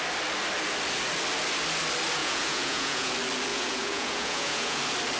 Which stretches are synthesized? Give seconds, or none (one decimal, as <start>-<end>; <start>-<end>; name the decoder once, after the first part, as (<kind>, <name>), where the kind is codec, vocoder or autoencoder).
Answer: 2.2-3.1 (vocoder, Vocos); 3.5-4.8